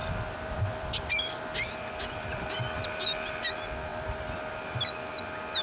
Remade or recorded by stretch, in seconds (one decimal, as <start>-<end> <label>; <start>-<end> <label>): 0.0-3.4 remade; 3.4-3.9 recorded; 3.9-4.6 remade; 4.6-5.6 recorded